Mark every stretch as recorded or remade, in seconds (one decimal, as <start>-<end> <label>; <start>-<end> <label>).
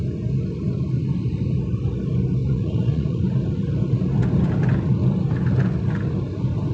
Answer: 0.0-2.4 recorded; 2.4-3.2 remade; 3.2-6.7 recorded